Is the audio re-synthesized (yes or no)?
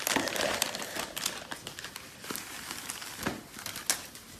no